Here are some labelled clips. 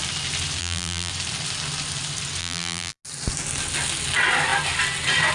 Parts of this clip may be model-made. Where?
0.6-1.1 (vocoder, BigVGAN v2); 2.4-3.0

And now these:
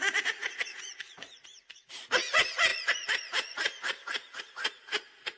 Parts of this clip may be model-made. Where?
0.0-5.4 (vocoder, Vocos)

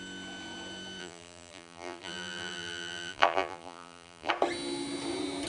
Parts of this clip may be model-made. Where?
1.0-4.3 (vocoder, BigVGAN v2)

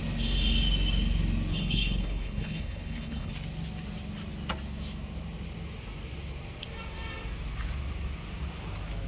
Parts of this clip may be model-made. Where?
1.5-3.3 (codec, HILCodec)

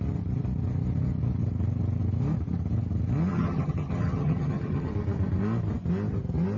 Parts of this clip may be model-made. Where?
3.3-4.9 (vocoder, HiFi-GAN)